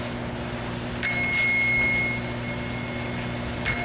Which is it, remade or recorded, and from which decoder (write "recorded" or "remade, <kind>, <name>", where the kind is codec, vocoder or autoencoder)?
recorded